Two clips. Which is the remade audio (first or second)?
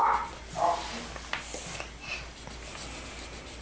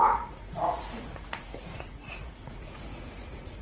second